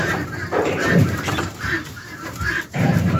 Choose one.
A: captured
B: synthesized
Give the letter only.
B